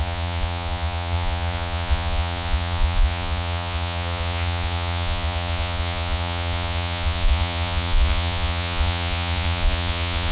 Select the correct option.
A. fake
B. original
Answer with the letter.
A